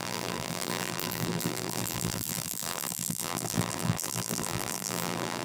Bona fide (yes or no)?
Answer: no